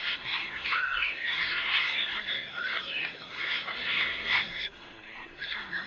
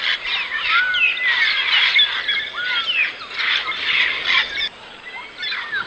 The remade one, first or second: first